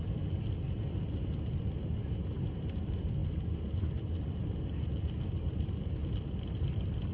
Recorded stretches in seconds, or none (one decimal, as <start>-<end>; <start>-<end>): 0.0-7.1